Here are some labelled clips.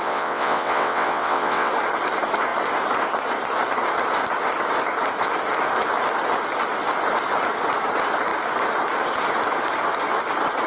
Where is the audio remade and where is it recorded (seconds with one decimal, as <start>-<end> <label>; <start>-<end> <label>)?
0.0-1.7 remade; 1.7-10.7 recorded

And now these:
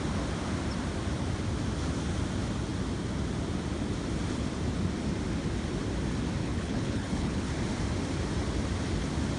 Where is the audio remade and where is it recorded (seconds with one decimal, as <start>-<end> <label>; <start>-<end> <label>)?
0.0-6.4 recorded; 6.4-7.5 remade; 7.5-9.4 recorded

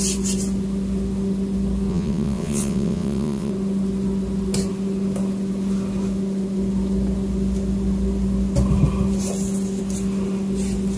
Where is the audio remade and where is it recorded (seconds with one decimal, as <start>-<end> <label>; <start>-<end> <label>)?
0.0-1.9 recorded; 1.9-3.5 remade; 3.5-11.0 recorded

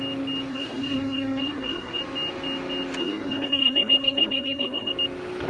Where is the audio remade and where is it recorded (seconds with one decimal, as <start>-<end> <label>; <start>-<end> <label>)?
0.0-0.5 recorded; 0.5-2.0 remade; 2.0-3.0 recorded; 3.0-4.9 remade; 4.9-5.5 recorded

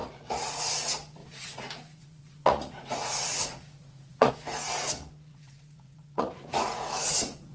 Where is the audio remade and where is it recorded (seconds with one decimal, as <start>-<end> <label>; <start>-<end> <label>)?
0.0-0.6 remade; 0.6-1.2 recorded; 1.2-4.3 remade; 4.3-5.3 recorded; 5.3-7.5 remade

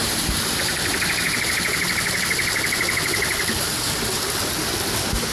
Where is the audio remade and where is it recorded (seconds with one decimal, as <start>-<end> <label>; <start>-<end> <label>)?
0.0-0.5 remade; 0.5-5.3 recorded

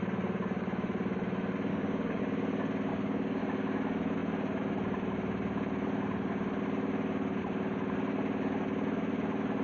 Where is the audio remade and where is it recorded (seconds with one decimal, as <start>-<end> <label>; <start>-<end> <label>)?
0.0-1.7 recorded; 1.7-2.2 remade; 2.2-2.9 recorded; 2.9-3.4 remade; 3.4-9.6 recorded